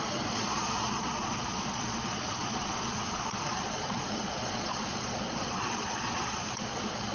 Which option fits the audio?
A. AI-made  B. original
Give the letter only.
A